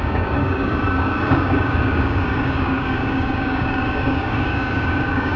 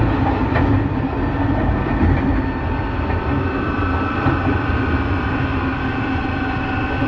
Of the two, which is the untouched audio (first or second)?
second